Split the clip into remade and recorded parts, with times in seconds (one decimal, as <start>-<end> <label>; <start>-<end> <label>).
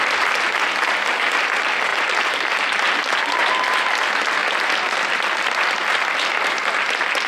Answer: 0.0-7.3 recorded